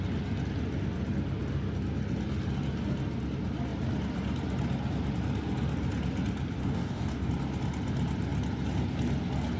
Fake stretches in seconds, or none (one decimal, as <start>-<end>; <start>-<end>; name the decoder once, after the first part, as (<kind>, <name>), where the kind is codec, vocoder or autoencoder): 6.6-7.3 (codec, DAC)